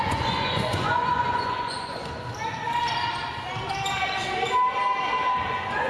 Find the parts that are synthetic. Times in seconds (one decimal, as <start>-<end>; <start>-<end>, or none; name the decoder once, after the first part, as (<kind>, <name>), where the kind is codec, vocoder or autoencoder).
0.0-2.0 (vocoder, Vocos); 5.5-5.9